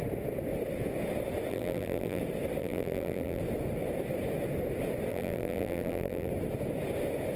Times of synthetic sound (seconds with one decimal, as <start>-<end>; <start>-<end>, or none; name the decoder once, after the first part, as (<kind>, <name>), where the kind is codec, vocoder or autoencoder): 1.5-2.2 (vocoder, BigVGAN v2); 2.6-3.4; 5.1-6.3